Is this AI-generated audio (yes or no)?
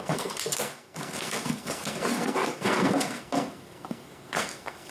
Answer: yes